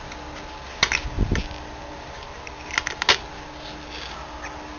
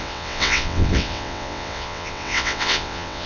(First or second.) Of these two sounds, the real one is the first